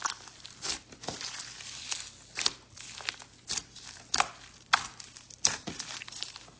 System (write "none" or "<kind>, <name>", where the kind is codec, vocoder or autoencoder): none